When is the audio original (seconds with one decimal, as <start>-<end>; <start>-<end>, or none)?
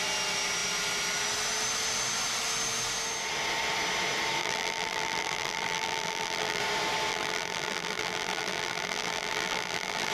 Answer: 0.0-4.4; 6.6-7.1